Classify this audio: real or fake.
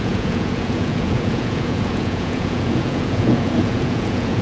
fake